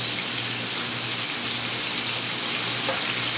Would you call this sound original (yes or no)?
yes